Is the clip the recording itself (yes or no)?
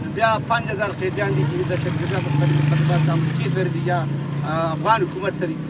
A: yes